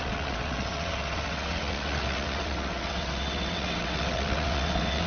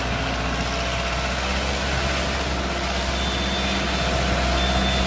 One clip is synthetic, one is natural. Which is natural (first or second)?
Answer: second